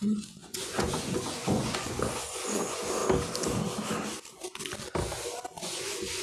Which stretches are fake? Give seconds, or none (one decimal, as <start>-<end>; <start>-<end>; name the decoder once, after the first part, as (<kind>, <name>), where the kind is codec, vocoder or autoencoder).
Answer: 0.0-3.0 (vocoder, Vocos); 5.6-6.2